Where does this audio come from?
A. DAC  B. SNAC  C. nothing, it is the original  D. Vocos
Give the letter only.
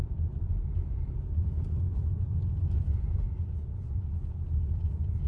D